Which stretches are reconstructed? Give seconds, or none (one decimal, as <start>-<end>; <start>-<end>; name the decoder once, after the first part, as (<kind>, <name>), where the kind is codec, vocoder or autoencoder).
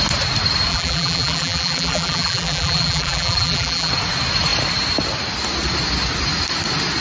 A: 0.7-3.9 (vocoder, BigVGAN v2)